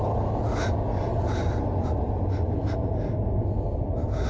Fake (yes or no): no